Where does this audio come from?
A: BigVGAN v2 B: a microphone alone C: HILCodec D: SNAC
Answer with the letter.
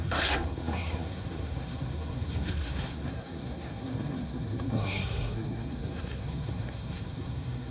D